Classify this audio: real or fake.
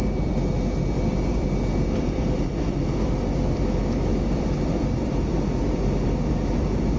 fake